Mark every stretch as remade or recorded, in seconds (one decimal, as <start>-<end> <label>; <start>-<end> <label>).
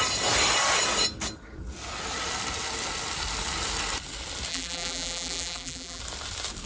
0.0-4.5 recorded; 4.5-6.0 remade; 6.0-6.7 recorded